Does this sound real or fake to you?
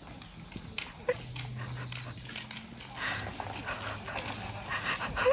real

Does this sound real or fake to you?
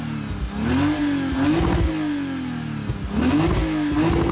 real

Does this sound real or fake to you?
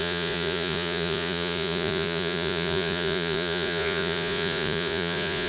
fake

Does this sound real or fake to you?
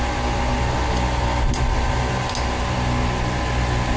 real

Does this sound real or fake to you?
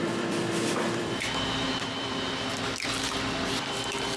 fake